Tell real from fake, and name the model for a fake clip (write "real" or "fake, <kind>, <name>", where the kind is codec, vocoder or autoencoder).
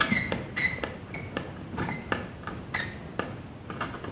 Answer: real